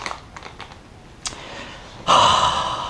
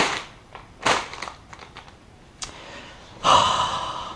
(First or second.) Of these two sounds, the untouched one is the first